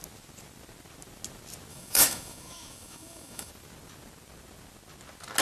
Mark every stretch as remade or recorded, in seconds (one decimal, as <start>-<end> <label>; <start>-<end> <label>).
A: 0.0-1.7 recorded; 1.7-3.5 remade; 3.5-5.4 recorded